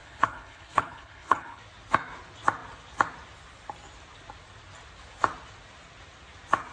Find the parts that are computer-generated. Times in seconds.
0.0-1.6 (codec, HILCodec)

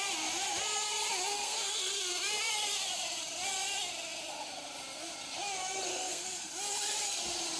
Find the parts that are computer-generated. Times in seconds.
1.3-2.1 (codec, SNAC); 5.9-6.5

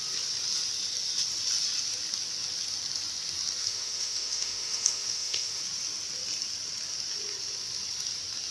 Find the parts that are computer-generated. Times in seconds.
3.6-5.6 (autoencoder, DAC-VAE)

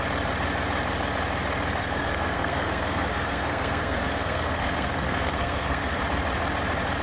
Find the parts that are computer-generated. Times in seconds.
1.8-6.0 (codec, SNAC)

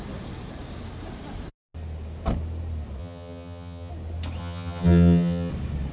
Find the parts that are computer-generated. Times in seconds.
3.0-3.9 (vocoder, HiFi-GAN); 4.4-5.5

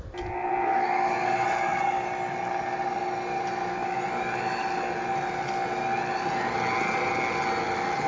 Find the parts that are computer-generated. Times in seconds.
none

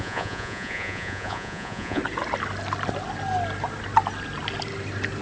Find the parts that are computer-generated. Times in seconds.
0.0-2.0 (vocoder, Vocos)

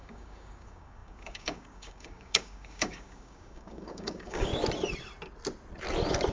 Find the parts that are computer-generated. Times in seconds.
0.0-4.5 (codec, DAC)